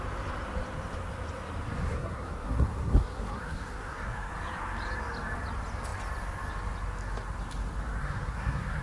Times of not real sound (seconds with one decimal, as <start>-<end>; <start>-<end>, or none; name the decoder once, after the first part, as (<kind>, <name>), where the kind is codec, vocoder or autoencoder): 1.8-4.3 (codec, SNAC); 8.0-8.8